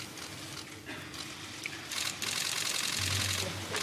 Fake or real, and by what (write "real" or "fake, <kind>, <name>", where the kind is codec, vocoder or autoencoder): real